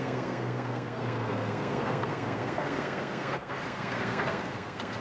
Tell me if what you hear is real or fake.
fake